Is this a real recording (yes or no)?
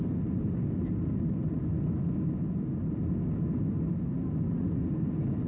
yes